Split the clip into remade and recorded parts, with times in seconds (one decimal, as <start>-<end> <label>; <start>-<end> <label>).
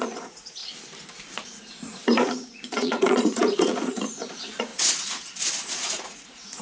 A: 0.0-0.6 remade; 0.6-1.6 recorded; 1.6-6.6 remade